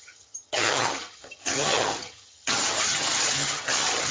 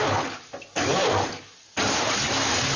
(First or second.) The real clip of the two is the second